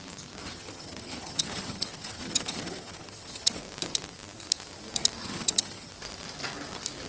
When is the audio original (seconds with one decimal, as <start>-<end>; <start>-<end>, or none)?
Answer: 0.0-0.4; 3.6-5.2; 5.9-7.1